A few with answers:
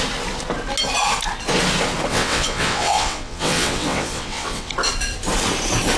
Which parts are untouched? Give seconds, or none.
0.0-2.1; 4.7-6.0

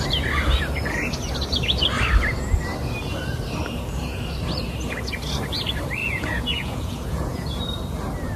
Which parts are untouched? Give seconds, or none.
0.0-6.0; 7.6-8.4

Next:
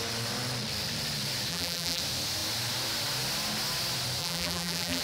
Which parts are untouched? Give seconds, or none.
0.0-1.5; 2.0-4.2

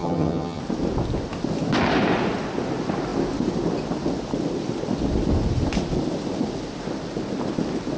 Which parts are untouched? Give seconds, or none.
0.6-8.0

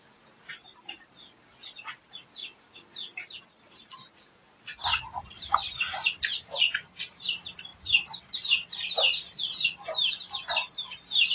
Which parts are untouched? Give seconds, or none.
0.0-7.7; 9.4-11.3

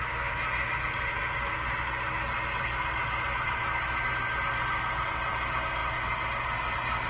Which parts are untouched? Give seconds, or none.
0.0-7.1